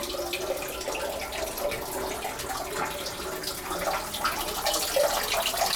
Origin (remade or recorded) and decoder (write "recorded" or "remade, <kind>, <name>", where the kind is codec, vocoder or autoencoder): recorded